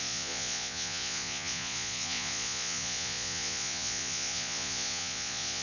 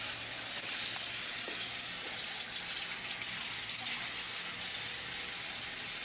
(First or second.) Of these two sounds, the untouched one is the second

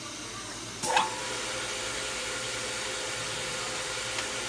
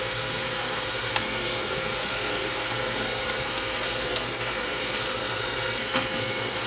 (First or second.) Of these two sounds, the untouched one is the first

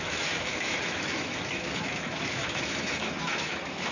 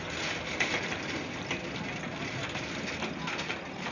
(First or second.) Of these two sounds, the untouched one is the second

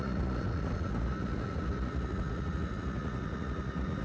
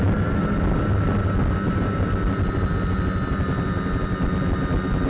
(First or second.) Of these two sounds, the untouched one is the second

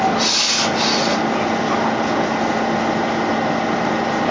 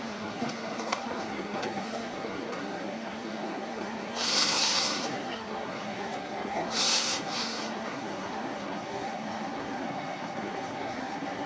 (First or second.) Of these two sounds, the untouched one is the first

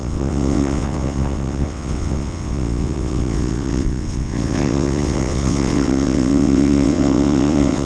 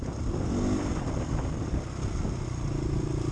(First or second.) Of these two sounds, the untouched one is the second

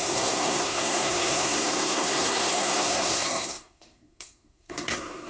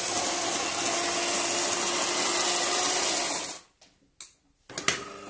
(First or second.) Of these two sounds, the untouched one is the second